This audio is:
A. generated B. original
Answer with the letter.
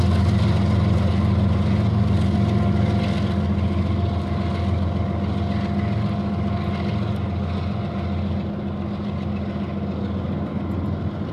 B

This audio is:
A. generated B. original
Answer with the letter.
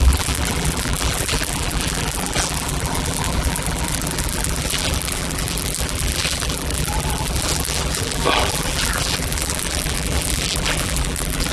A